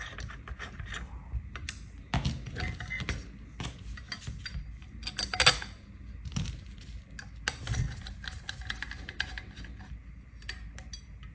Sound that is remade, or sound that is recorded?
recorded